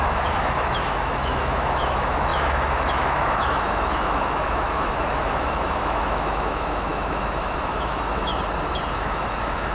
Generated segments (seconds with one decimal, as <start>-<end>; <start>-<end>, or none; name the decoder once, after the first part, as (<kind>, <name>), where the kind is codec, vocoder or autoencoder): 0.0-8.3 (autoencoder, DAC-VAE); 9.0-9.7